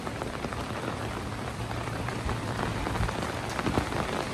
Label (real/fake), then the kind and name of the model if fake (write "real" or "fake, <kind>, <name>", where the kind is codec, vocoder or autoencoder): fake, vocoder, BigVGAN v2